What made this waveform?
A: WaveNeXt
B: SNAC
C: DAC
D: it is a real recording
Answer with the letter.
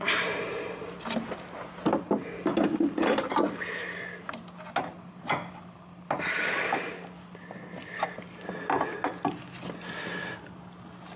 D